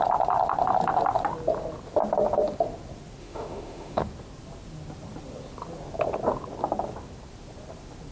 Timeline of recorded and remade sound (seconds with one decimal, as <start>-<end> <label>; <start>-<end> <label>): 0.0-3.2 recorded; 3.2-4.0 remade; 4.0-8.1 recorded